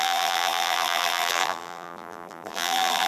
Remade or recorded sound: remade